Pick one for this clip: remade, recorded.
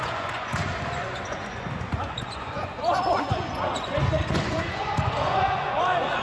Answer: remade